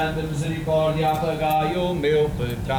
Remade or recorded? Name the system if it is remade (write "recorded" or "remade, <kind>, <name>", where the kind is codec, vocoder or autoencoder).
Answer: recorded